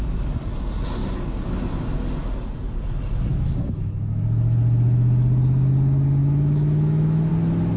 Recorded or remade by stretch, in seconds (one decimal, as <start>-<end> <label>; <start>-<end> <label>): 0.0-3.3 recorded; 3.3-4.2 remade; 4.2-6.2 recorded; 6.2-7.3 remade; 7.3-7.8 recorded